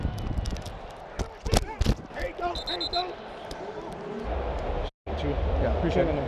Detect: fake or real real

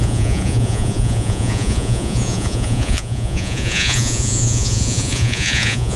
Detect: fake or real fake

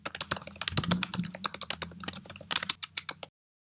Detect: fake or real real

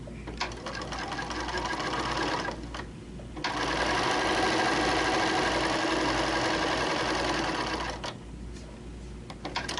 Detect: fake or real real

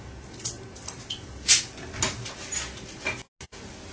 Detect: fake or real real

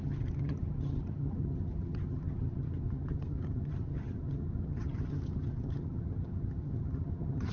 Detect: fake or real fake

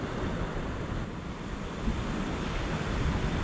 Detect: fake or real real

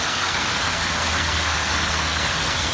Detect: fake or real fake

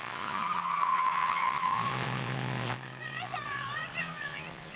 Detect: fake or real fake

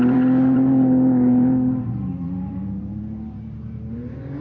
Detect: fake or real fake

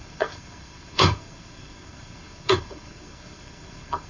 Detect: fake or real fake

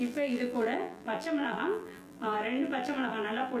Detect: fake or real fake